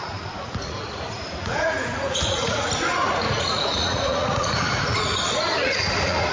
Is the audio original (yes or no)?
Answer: no